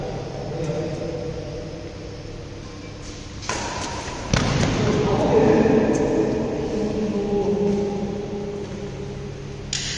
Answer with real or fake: real